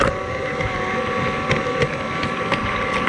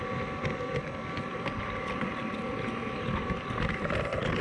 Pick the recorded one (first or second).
first